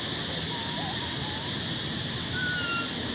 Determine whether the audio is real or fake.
real